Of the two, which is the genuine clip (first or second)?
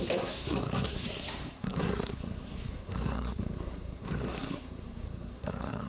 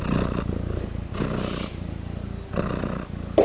second